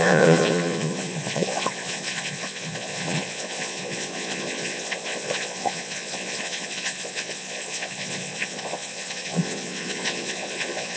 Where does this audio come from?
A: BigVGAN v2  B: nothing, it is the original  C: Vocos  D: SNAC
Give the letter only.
C